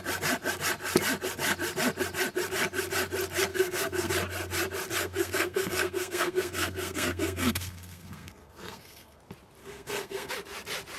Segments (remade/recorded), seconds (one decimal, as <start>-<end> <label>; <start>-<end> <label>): 0.0-3.5 recorded; 3.5-4.1 remade; 4.1-5.0 recorded; 5.0-9.2 remade; 9.2-9.6 recorded; 9.6-10.3 remade; 10.3-11.0 recorded